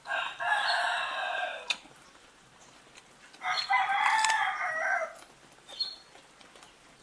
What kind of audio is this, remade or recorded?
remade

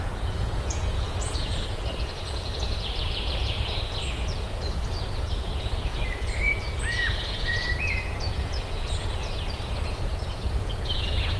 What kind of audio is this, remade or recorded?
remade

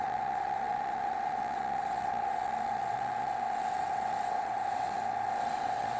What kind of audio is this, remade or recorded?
remade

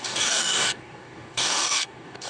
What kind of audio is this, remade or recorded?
remade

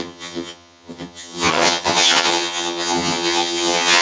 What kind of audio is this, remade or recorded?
remade